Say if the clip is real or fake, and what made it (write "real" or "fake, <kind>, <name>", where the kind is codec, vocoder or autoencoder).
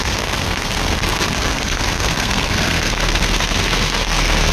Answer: fake, codec, SNAC